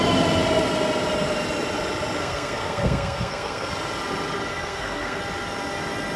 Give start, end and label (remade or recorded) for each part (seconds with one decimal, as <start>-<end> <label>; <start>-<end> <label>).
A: 0.0-2.2 recorded; 2.2-3.7 remade; 3.7-4.5 recorded; 4.5-5.2 remade; 5.2-6.2 recorded